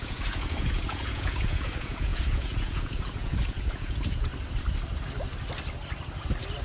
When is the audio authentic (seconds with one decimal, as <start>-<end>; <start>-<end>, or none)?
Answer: 4.3-6.6